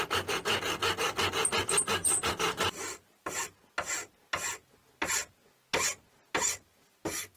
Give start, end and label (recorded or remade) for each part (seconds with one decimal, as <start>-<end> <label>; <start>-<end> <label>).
0.0-2.0 recorded; 2.0-3.6 remade; 3.6-7.4 recorded